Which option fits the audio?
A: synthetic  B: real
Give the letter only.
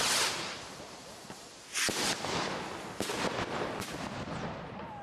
B